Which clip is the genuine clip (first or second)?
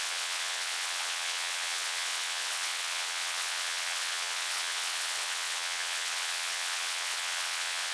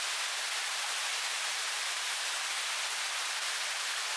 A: second